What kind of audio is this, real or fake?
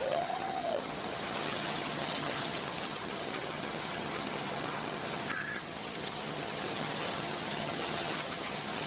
fake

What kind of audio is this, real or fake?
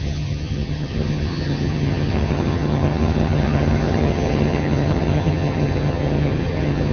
fake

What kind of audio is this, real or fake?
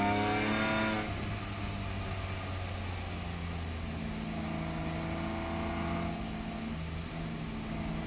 real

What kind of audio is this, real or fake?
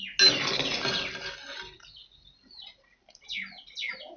real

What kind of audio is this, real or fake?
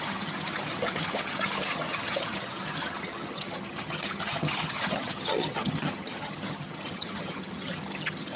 fake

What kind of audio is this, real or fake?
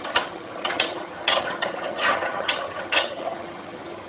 fake